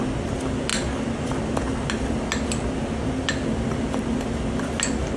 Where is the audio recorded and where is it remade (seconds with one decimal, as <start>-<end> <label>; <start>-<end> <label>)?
0.0-5.2 recorded